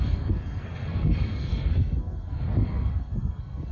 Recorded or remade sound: remade